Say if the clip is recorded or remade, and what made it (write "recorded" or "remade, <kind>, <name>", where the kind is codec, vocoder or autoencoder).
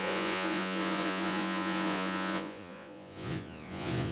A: remade, vocoder, Vocos